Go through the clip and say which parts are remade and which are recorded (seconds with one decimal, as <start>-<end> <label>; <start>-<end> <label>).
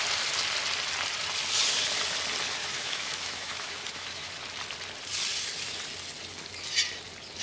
0.0-2.6 recorded; 2.6-4.3 remade; 4.3-7.4 recorded